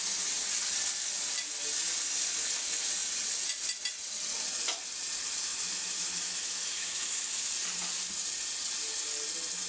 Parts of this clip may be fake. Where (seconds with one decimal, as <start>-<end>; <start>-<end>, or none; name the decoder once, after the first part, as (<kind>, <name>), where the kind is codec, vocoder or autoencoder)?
5.5-7.5 (autoencoder, DAC-VAE)